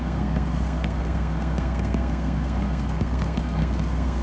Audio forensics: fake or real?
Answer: fake